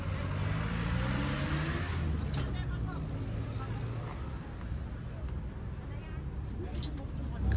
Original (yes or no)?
yes